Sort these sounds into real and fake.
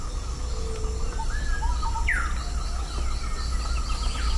real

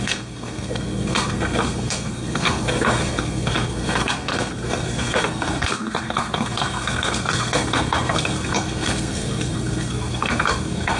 fake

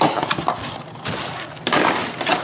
real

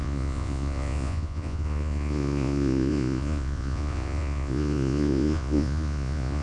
fake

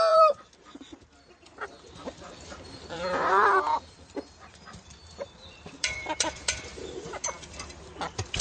fake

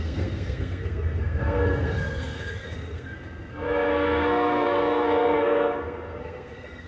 fake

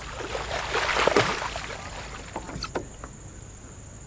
real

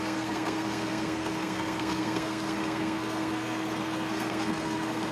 fake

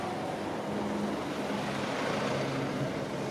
real